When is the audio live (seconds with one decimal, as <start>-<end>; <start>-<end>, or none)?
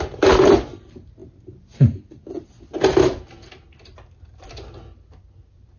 0.0-5.8